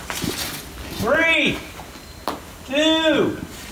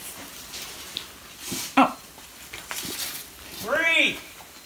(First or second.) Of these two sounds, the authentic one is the first